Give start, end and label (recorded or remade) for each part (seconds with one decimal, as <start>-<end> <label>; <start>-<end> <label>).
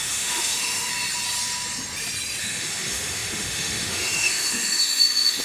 0.0-0.9 remade; 0.9-2.4 recorded; 2.4-5.4 remade